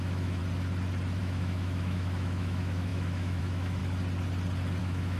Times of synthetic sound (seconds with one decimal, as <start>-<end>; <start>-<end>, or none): 0.0-0.4; 1.2-3.8; 4.8-5.2